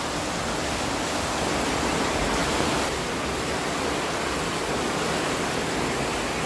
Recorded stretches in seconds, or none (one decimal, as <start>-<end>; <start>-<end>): 0.0-6.5

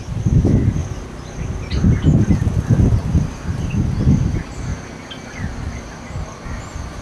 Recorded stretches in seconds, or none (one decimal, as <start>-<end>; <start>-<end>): 0.0-7.0

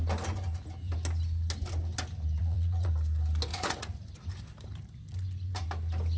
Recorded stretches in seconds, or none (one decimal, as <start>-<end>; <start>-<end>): 0.0-2.4; 2.9-3.5; 4.1-6.2